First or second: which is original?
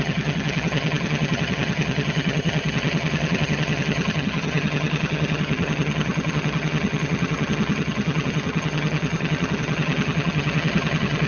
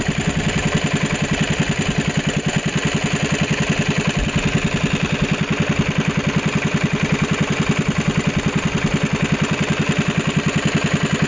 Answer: second